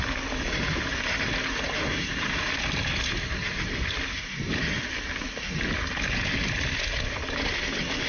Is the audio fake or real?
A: real